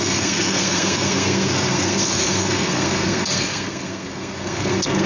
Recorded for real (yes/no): no